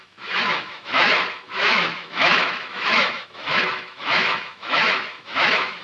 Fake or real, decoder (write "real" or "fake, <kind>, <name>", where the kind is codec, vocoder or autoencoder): fake, autoencoder, DAC-VAE